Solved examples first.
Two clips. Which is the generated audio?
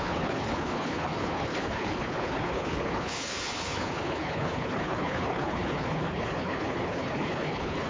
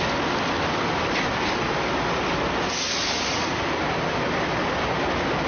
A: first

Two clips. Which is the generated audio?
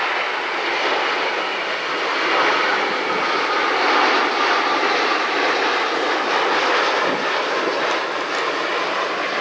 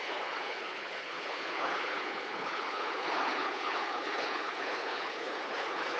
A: second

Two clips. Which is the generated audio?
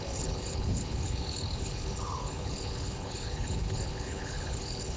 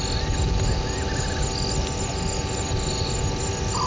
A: first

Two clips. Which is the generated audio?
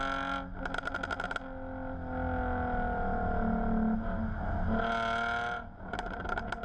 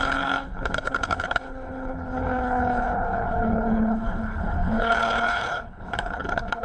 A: second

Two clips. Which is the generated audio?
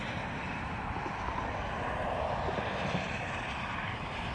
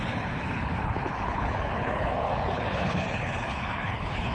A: second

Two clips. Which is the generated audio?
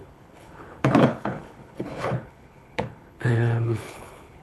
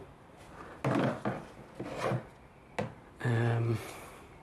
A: first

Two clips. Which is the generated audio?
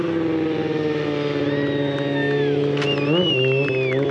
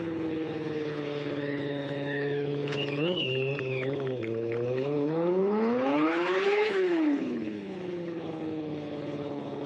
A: second